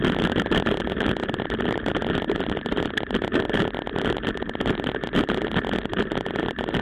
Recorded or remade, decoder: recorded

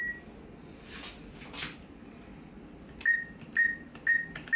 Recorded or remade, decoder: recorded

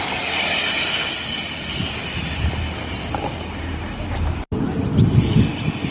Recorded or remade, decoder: recorded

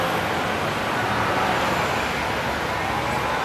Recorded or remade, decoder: recorded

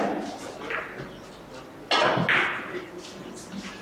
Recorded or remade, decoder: recorded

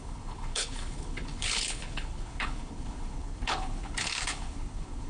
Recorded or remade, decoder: remade, codec, HILCodec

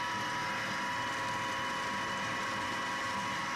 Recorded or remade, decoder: recorded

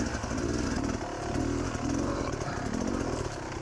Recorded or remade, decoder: recorded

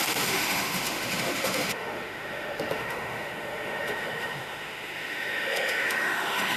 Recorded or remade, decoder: remade, autoencoder, DAC-VAE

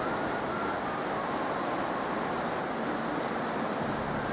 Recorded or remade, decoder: recorded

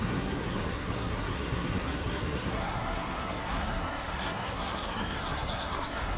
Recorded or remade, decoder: remade, codec, SNAC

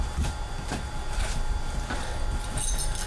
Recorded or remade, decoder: recorded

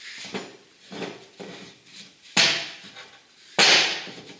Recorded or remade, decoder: recorded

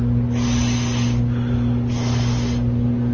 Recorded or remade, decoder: recorded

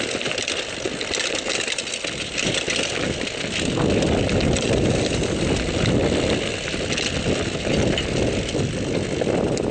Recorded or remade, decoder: recorded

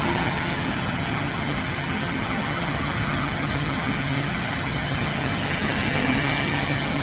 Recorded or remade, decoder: remade, vocoder, HiFi-GAN